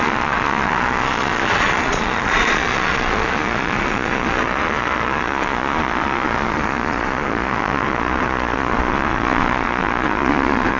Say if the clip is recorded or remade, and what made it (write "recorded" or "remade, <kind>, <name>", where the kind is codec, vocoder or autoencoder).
remade, vocoder, Vocos